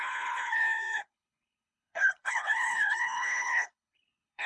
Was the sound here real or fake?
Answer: fake